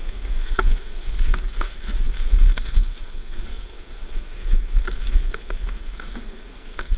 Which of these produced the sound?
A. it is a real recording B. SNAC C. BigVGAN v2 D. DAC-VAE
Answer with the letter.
B